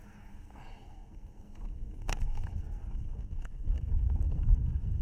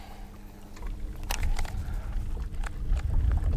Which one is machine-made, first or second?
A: first